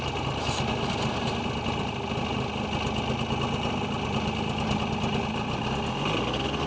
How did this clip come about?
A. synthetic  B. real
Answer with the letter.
B